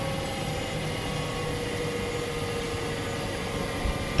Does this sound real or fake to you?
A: real